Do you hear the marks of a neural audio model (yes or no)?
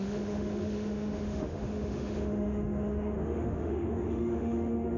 yes